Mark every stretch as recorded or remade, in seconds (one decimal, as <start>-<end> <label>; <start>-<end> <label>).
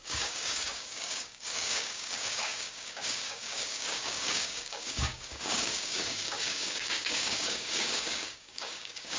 0.0-9.2 remade